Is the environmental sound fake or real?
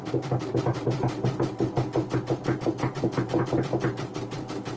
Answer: real